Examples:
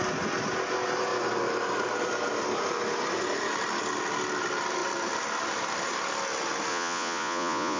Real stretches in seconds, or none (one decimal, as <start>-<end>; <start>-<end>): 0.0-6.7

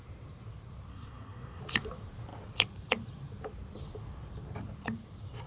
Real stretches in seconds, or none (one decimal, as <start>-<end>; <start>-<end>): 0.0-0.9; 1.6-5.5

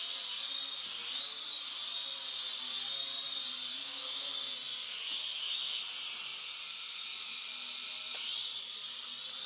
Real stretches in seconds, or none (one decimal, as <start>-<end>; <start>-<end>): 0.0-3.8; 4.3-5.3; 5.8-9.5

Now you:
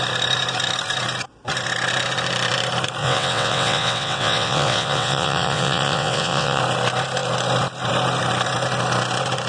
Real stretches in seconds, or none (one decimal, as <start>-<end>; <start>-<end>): 0.0-3.0; 6.6-9.5